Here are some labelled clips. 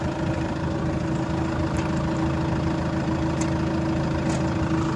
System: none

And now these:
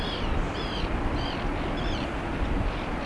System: none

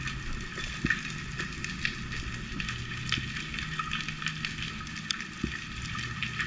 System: none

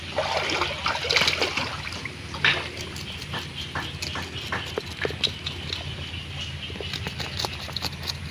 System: none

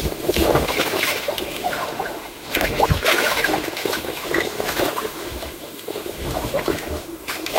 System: autoencoder, DAC-VAE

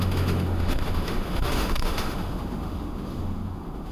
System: autoencoder, DAC-VAE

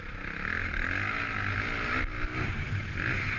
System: none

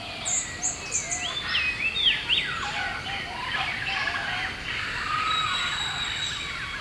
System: none